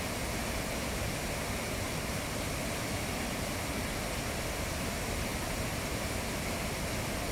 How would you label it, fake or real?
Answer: real